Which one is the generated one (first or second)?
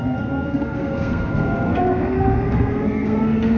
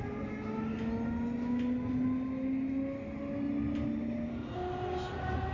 first